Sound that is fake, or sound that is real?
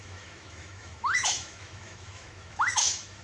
fake